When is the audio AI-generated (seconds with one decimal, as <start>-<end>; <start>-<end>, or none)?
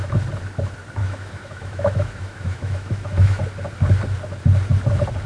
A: 1.0-3.4